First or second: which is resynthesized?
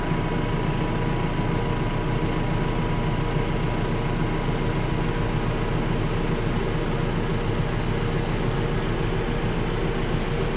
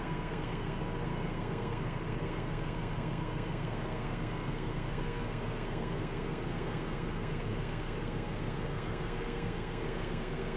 second